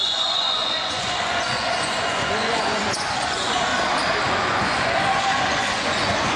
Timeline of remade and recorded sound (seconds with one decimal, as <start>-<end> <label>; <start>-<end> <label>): 0.0-3.7 remade; 3.7-4.3 recorded; 4.3-6.4 remade